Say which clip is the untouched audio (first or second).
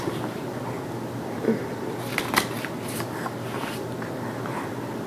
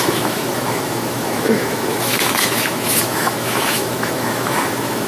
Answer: first